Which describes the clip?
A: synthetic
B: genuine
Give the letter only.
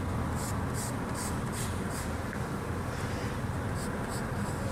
B